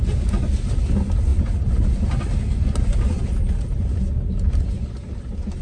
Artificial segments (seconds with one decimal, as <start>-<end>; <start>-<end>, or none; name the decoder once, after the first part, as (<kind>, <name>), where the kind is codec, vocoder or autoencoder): none